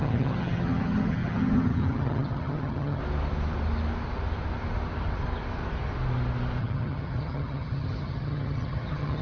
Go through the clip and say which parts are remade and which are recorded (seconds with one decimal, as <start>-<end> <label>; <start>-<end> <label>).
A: 0.0-3.0 remade; 3.0-6.6 recorded; 6.6-9.2 remade